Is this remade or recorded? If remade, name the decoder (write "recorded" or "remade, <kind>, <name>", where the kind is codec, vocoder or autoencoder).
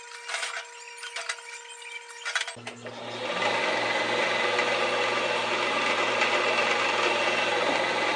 recorded